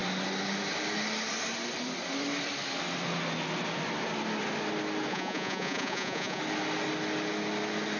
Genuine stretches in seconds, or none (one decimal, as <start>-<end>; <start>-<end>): 0.0-5.1; 6.4-8.0